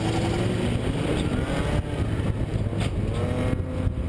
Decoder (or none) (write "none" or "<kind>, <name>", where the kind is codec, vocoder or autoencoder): none